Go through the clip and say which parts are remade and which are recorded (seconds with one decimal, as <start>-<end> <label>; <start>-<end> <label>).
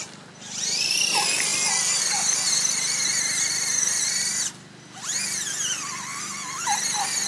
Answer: 0.0-7.3 recorded